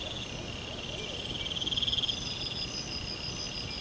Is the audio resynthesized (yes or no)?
no